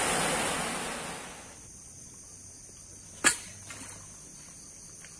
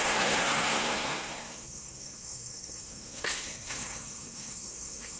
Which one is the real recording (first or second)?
first